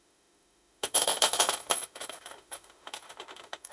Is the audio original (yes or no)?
no